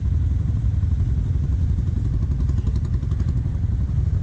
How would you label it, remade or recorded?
remade